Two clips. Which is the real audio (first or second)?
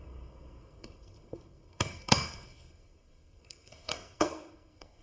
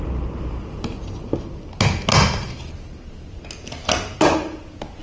second